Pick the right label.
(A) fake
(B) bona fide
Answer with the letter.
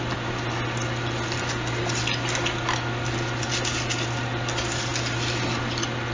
B